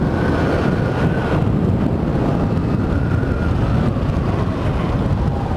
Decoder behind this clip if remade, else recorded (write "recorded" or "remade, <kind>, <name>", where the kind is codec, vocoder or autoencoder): recorded